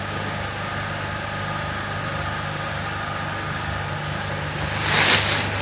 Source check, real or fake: real